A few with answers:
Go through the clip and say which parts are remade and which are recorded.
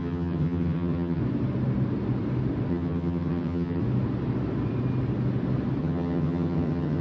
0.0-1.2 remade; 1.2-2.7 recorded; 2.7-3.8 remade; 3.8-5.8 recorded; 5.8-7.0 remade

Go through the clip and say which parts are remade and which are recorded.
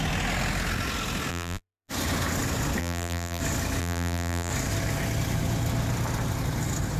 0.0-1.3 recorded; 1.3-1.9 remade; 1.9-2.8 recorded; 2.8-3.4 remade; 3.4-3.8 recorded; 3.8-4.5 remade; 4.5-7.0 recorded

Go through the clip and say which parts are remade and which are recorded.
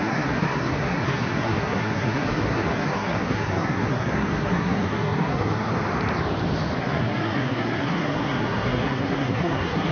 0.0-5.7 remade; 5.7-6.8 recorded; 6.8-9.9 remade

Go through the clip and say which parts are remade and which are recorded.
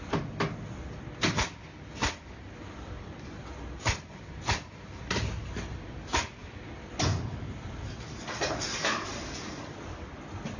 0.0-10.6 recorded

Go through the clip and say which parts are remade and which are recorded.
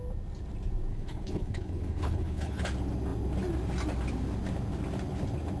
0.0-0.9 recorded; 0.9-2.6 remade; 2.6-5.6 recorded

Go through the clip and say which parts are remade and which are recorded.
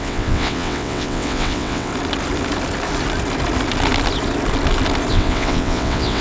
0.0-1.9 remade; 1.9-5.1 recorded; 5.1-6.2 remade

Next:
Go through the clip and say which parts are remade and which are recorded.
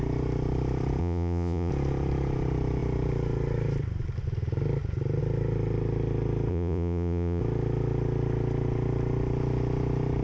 0.0-1.0 recorded; 1.0-1.7 remade; 1.7-6.5 recorded; 6.5-7.4 remade; 7.4-10.2 recorded